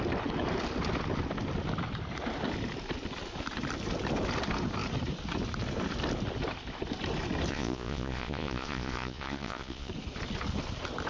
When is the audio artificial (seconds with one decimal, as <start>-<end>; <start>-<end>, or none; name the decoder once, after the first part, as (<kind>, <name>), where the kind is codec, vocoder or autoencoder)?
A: 7.5-9.9 (vocoder, Vocos)